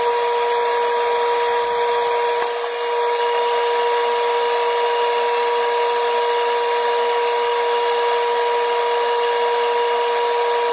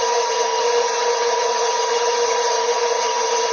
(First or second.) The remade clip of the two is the second